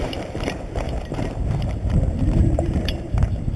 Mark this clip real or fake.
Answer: fake